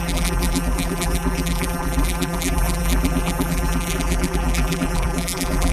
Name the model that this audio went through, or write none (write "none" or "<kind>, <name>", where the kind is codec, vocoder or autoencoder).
vocoder, BigVGAN v2